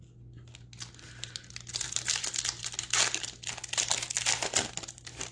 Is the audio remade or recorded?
recorded